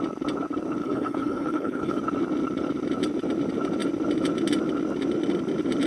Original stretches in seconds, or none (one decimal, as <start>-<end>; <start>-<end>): 0.0-0.8; 2.0-5.9